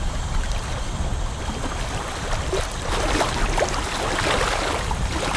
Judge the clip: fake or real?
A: real